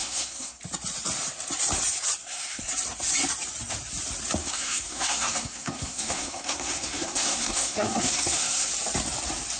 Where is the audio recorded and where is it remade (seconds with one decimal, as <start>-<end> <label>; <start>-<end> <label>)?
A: 0.0-0.6 remade; 0.6-2.2 recorded; 2.2-2.7 remade; 2.7-4.4 recorded; 4.4-8.7 remade; 8.7-9.6 recorded